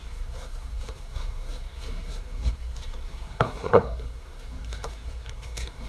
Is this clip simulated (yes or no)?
yes